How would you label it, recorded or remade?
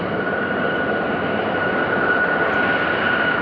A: recorded